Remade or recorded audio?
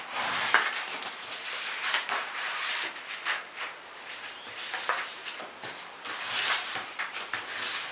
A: remade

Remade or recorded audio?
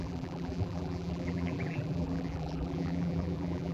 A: remade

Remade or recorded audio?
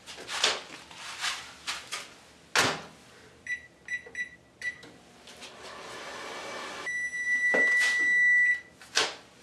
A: recorded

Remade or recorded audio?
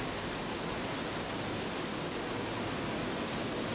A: recorded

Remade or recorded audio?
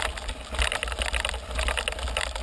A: recorded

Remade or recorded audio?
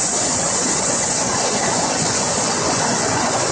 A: remade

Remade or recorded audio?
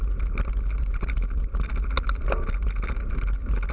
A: recorded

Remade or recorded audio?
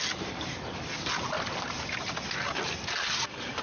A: recorded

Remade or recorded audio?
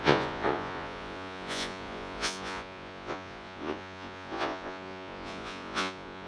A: remade